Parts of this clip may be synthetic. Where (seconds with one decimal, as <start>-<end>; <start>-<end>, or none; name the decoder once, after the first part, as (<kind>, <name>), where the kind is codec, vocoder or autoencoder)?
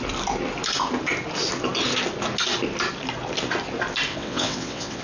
4.1-5.0 (vocoder, WaveNeXt)